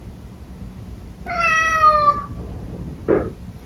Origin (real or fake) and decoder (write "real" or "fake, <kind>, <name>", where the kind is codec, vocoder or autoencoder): real